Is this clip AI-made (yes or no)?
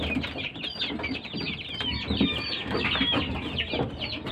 no